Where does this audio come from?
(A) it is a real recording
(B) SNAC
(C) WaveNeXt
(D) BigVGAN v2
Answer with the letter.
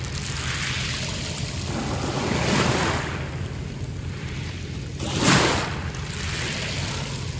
A